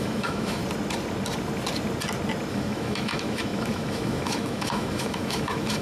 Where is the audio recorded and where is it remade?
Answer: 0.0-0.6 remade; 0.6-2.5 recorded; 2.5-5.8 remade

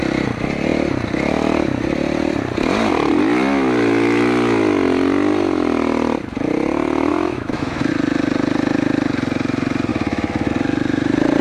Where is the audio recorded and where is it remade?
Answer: 0.0-7.1 recorded; 7.1-7.9 remade; 7.9-9.9 recorded; 9.9-10.5 remade; 10.5-11.4 recorded